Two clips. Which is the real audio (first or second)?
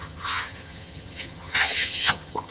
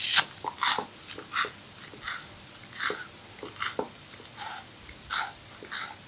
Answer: second